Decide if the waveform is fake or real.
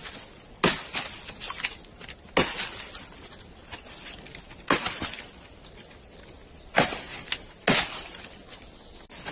real